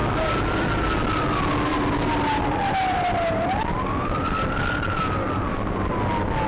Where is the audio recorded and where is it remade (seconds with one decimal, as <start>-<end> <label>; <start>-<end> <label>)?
0.0-5.5 recorded; 5.5-6.0 remade; 6.0-6.5 recorded